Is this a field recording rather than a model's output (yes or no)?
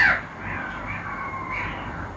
yes